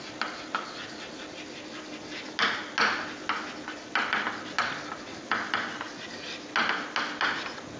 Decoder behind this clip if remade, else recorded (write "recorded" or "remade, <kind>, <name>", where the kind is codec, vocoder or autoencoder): recorded